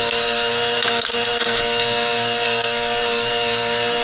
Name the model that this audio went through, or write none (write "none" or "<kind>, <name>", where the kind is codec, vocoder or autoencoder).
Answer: codec, SNAC